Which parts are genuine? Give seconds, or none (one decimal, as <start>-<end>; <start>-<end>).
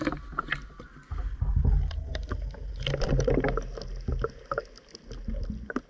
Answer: 0.0-5.9